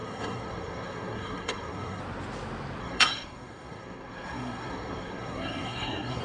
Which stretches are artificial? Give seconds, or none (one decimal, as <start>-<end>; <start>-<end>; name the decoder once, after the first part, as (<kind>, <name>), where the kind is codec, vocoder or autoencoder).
0.0-2.0 (codec, SNAC); 2.8-6.2